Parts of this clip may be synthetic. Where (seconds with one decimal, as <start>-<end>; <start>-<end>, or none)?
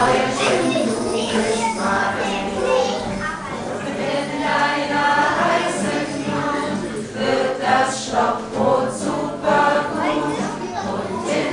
0.0-2.1